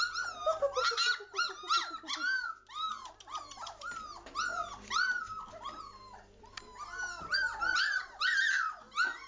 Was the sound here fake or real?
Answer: real